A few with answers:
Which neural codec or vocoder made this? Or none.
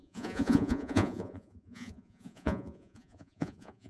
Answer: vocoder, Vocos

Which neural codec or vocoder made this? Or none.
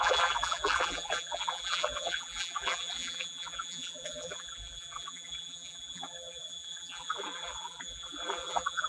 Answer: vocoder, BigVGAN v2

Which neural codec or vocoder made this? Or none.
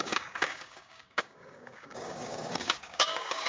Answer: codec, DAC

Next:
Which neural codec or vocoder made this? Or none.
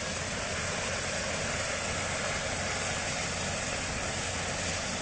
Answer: none